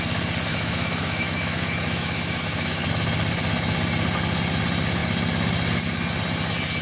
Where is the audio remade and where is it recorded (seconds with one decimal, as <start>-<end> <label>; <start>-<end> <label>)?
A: 0.0-0.5 recorded; 0.5-2.9 remade; 2.9-6.8 recorded